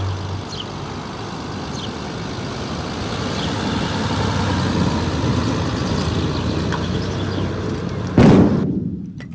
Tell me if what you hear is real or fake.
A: real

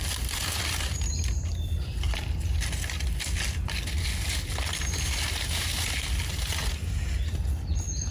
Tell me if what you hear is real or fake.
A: real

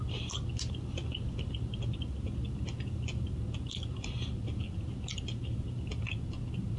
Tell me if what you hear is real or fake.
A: real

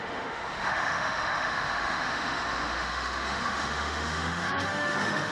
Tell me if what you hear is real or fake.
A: fake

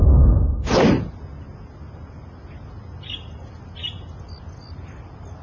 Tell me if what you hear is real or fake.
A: real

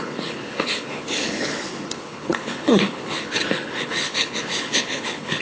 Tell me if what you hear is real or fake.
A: fake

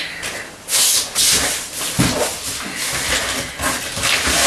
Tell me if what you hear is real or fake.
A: real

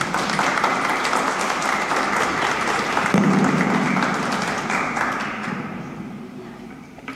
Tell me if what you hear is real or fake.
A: fake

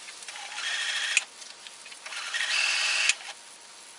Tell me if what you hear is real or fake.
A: real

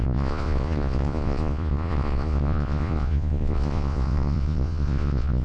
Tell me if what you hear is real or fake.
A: fake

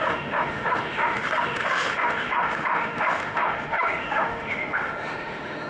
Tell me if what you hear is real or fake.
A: fake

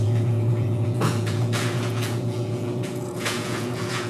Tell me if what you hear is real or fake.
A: fake